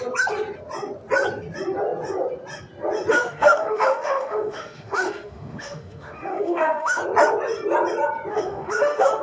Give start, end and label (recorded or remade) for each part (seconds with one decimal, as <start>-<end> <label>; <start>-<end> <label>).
0.0-3.1 recorded; 3.1-7.0 remade; 7.0-8.3 recorded; 8.3-9.2 remade